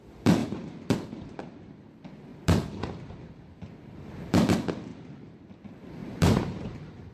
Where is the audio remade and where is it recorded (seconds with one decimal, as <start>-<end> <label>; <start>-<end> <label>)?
0.0-4.9 recorded; 4.9-5.5 remade; 5.5-6.0 recorded; 6.0-7.1 remade

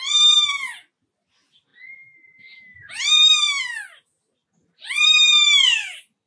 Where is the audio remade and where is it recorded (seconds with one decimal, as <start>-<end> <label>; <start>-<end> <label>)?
0.0-4.4 recorded; 4.4-6.3 remade